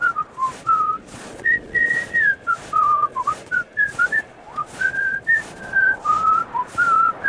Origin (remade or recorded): remade